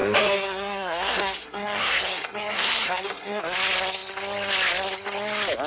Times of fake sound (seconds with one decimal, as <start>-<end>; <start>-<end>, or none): 0.0-3.4